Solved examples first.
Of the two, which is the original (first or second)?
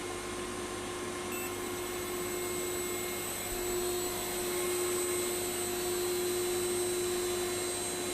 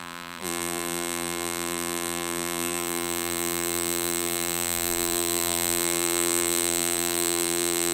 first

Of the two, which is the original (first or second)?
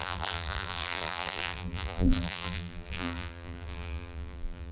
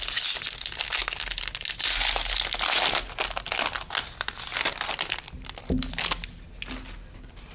second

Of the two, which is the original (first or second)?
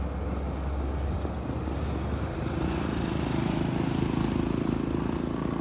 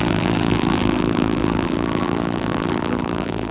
first